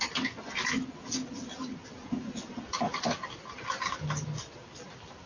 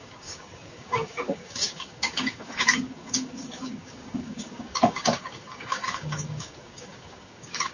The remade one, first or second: second